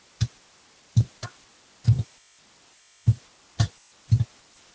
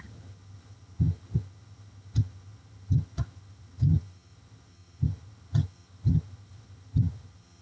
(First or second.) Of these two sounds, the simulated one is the second